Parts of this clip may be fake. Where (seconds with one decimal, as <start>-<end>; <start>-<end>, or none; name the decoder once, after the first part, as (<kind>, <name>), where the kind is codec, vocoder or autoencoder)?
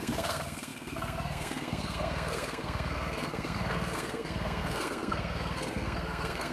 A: 0.0-6.5 (codec, SNAC)